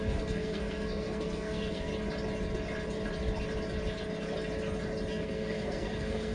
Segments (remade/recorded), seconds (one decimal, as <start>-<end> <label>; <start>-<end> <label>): 0.0-1.9 remade; 1.9-5.1 recorded; 5.1-6.3 remade